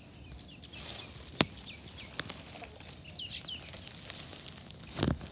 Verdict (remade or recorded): recorded